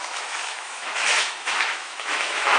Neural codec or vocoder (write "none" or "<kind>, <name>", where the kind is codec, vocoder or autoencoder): autoencoder, DAC-VAE